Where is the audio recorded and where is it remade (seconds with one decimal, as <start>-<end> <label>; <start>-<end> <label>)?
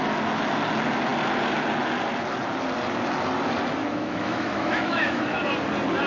0.0-3.8 recorded; 3.8-5.5 remade; 5.5-6.1 recorded